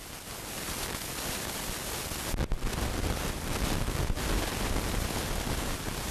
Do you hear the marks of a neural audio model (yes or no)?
no